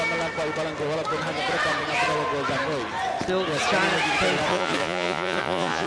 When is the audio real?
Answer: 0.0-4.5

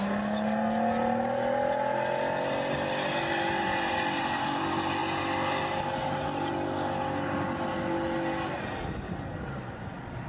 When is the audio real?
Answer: 0.0-10.3